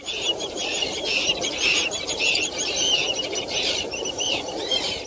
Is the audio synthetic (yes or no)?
yes